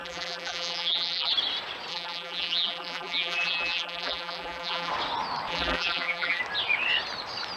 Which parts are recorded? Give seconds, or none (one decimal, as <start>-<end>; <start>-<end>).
1.3-1.9; 4.9-5.5; 6.4-7.6